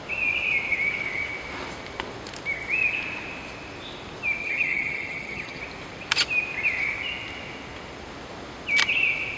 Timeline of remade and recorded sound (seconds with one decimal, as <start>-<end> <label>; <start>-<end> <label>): 0.0-4.4 recorded; 4.4-5.6 remade; 5.6-9.4 recorded